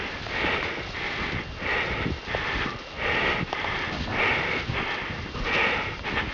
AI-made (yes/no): no